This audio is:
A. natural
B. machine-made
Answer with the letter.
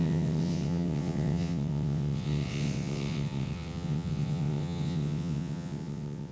B